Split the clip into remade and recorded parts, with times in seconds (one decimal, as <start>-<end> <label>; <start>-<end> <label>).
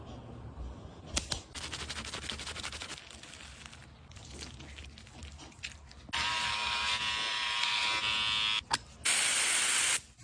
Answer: 0.0-10.2 recorded